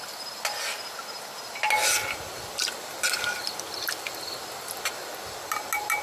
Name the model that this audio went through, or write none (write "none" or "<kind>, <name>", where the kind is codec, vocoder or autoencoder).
none